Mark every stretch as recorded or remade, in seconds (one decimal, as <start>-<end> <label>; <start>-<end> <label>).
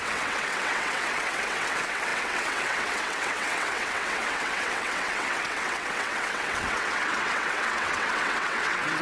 0.0-9.0 remade